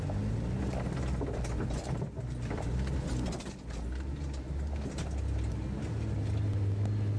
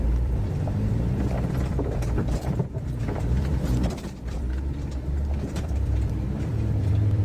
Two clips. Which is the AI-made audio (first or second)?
second